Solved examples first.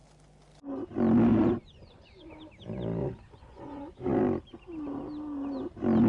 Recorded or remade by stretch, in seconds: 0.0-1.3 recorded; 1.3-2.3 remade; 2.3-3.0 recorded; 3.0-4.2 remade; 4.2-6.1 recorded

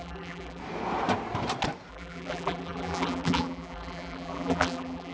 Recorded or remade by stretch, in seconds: 0.0-0.6 remade; 0.6-1.9 recorded; 1.9-5.1 remade

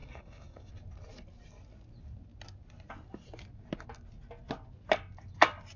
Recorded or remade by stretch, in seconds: 0.0-0.7 remade; 0.7-5.8 recorded

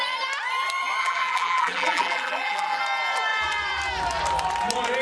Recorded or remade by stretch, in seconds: 0.0-1.0 recorded; 1.0-2.8 remade; 2.8-5.0 recorded

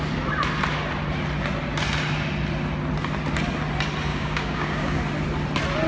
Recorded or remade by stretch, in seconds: 0.0-4.1 recorded; 4.1-5.0 remade; 5.0-5.9 recorded

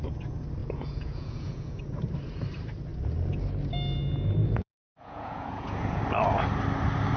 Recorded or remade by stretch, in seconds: 0.0-0.6 recorded; 0.6-1.8 remade; 1.8-4.4 recorded; 4.4-6.0 remade; 6.0-7.2 recorded

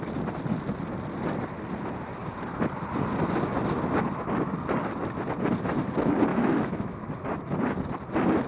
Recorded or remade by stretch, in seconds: 0.0-6.3 recorded; 6.3-7.1 remade; 7.1-8.5 recorded